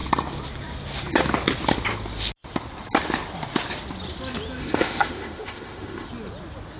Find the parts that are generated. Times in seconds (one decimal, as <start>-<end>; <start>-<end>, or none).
4.6-6.1